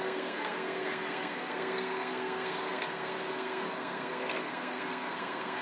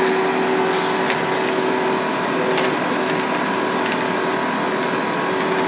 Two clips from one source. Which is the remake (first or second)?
first